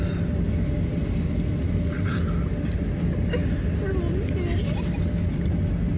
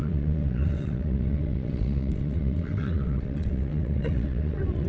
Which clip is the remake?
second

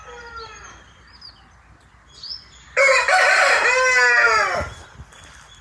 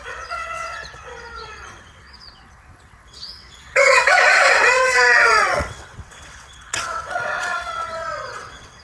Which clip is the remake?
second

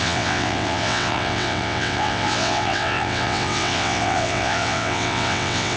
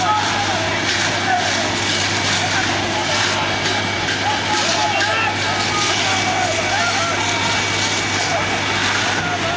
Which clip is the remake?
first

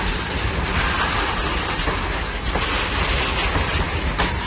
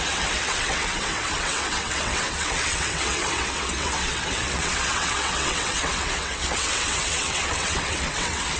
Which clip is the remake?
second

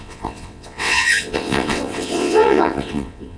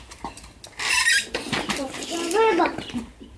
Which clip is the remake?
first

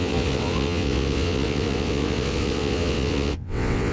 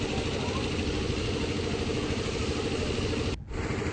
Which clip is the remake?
first